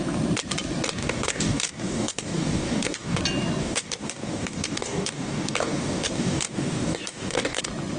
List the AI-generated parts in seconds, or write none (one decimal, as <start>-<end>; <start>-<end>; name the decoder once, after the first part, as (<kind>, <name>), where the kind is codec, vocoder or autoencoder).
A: 1.0-3.2 (codec, DAC); 3.6-7.6